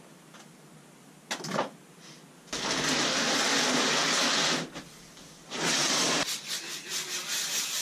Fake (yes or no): no